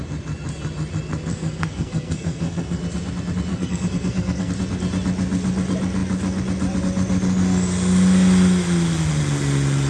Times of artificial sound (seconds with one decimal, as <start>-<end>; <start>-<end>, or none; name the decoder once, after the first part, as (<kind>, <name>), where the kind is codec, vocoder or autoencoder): 1.3-2.8 (codec, SNAC); 3.5-4.5